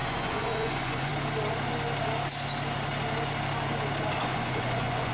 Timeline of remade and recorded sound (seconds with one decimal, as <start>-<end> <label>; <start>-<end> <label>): 0.0-1.1 remade; 1.1-4.2 recorded; 4.2-5.1 remade